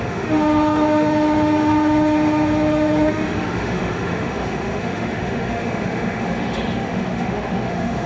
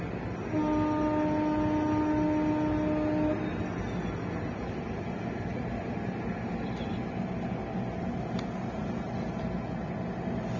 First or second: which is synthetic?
first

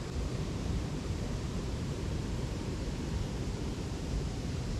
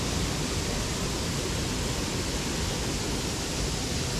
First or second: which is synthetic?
first